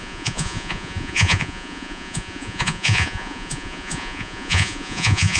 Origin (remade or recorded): remade